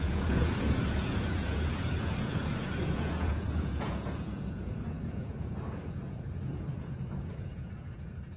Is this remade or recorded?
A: remade